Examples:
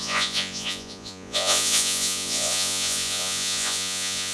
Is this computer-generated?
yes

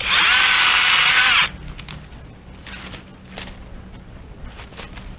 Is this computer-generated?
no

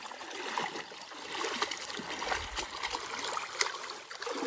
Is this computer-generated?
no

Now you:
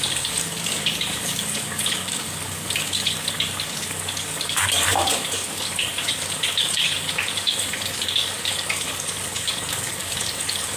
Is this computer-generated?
yes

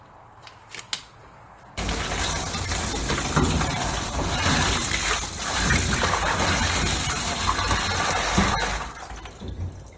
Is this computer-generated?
no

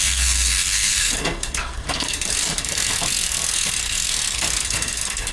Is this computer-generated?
yes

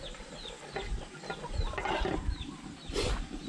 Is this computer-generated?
no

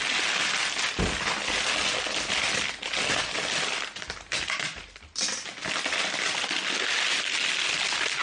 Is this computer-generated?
no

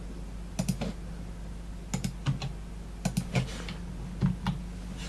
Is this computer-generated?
no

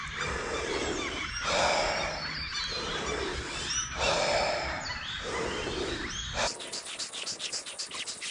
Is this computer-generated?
no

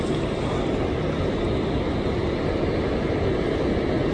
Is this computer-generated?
no